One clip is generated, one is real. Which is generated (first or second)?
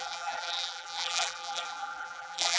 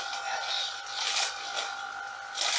first